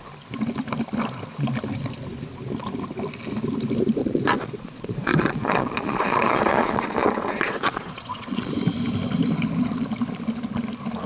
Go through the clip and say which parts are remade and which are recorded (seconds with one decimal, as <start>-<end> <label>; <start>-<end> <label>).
0.0-4.0 recorded; 4.0-8.5 remade; 8.5-11.1 recorded